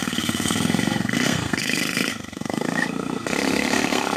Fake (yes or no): yes